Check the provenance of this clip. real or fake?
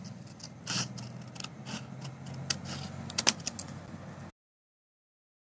real